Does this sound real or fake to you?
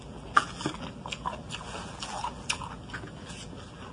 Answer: fake